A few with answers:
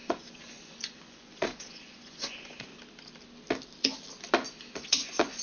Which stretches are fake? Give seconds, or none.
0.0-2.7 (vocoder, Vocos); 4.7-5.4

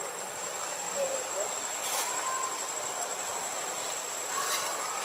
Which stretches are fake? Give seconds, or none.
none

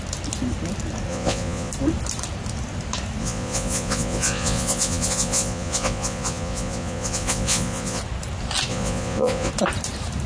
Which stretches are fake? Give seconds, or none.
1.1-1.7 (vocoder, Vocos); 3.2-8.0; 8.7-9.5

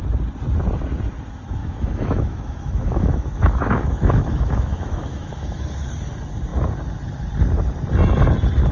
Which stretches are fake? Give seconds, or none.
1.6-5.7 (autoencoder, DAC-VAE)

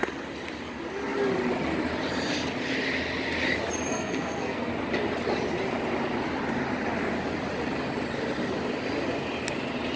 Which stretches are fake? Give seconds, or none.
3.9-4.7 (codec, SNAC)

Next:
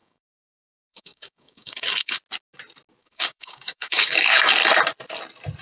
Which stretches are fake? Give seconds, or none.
0.0-2.2 (codec, DAC); 3.0-4.5

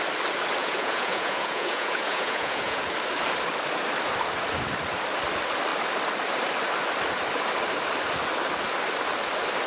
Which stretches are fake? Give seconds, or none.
0.6-2.8 (vocoder, Vocos)

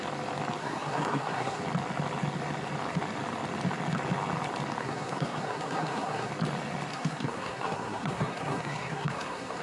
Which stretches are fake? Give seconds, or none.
0.6-1.6 (codec, SNAC); 4.8-6.3; 6.9-9.6